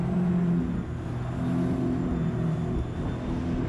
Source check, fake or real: real